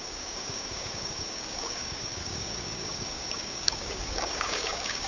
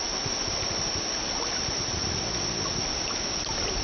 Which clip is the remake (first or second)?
first